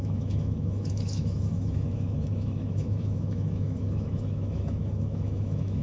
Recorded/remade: remade